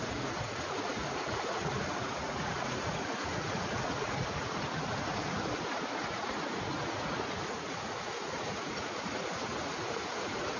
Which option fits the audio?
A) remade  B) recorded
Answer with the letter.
A